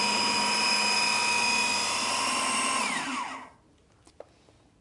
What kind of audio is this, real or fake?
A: real